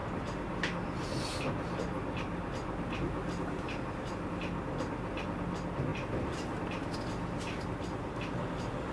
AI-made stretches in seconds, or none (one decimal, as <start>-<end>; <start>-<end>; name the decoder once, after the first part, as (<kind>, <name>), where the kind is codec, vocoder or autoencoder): none